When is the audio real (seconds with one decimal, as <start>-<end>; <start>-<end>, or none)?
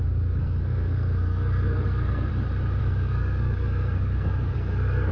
0.0-0.4; 2.3-2.8